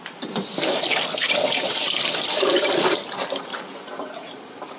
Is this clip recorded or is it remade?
remade